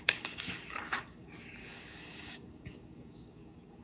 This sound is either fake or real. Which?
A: fake